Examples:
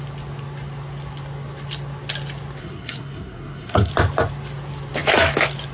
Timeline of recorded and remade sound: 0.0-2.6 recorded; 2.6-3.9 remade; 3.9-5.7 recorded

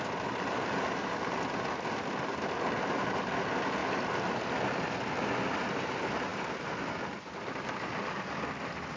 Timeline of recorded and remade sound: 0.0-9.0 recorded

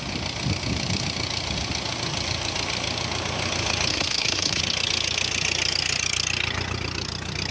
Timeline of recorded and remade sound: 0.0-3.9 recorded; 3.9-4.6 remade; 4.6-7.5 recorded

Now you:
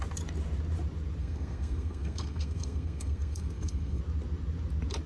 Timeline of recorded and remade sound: 0.0-1.2 recorded; 1.2-4.0 remade; 4.0-5.1 recorded

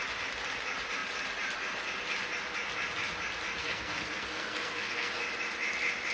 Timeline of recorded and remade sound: 0.0-3.6 recorded; 3.6-5.2 remade; 5.2-6.1 recorded

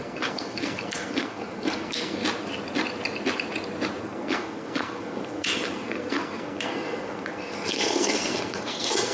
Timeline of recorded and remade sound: 0.0-2.2 remade; 2.2-4.0 recorded; 4.0-9.1 remade

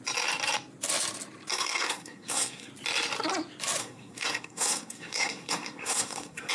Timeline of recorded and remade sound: 0.0-1.5 recorded; 1.5-2.7 remade; 2.7-3.8 recorded; 3.8-6.5 remade